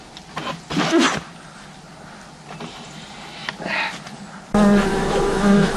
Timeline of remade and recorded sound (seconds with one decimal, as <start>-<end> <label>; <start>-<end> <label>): 0.0-4.9 recorded; 4.9-5.8 remade